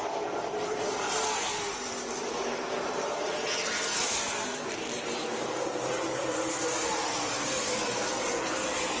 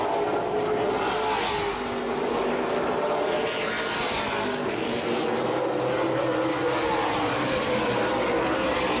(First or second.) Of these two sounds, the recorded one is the second